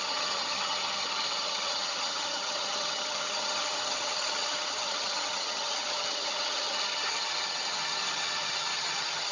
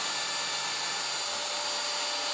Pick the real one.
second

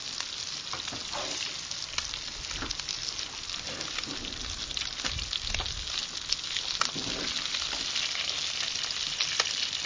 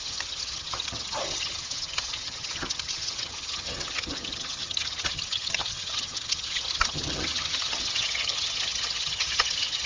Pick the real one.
first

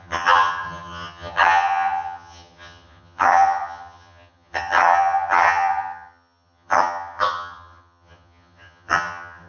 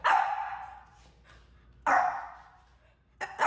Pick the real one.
second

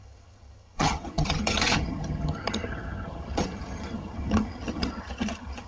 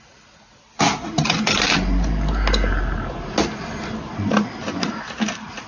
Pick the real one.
second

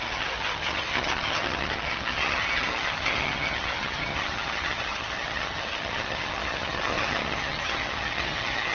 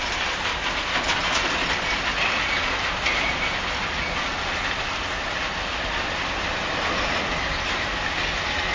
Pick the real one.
second